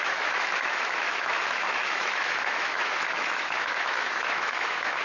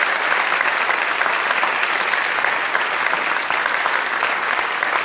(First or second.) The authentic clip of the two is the second